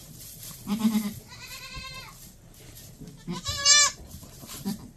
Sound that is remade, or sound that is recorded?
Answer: remade